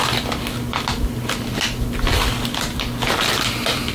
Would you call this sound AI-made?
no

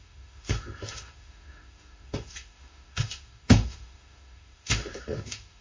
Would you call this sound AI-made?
yes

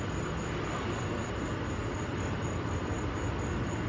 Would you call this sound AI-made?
no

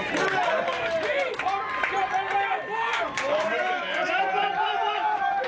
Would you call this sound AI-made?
yes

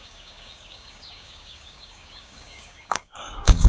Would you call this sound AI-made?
yes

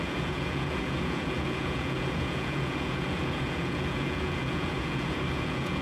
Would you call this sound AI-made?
yes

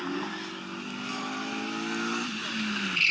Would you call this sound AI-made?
no